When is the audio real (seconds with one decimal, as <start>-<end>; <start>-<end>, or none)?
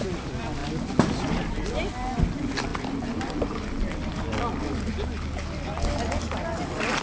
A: 0.0-7.0